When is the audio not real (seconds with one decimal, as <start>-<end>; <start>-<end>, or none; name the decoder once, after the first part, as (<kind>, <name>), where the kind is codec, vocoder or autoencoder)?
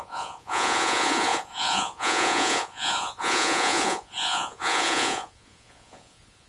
0.0-6.5 (vocoder, Vocos)